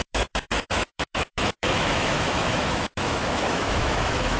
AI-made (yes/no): yes